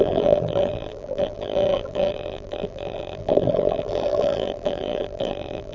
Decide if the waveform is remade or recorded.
remade